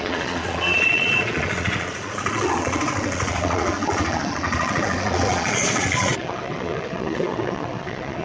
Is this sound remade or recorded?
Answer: remade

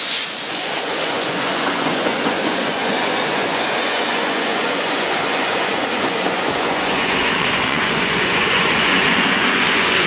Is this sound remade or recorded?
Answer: remade